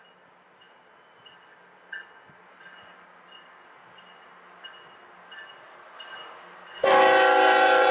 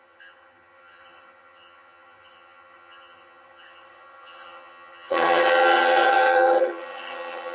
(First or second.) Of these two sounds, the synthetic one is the second